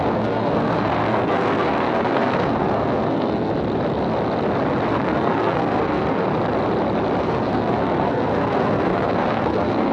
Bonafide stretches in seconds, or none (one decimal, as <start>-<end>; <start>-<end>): 3.5-4.9; 6.3-7.2